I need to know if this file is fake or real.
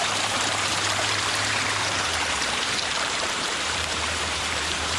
fake